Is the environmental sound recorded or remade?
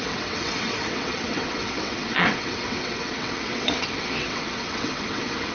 remade